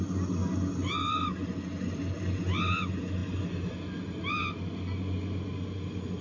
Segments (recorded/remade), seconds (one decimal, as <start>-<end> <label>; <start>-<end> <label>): 0.0-6.2 recorded